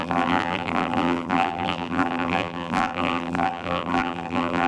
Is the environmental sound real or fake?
fake